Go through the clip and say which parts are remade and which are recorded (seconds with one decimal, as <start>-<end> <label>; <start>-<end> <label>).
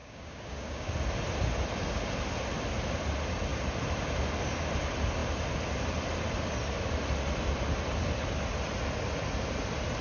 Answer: 0.0-0.9 remade; 0.9-10.0 recorded